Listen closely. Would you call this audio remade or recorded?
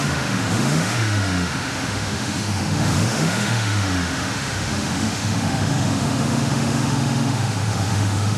remade